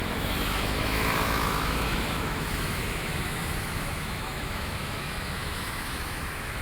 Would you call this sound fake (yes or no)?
yes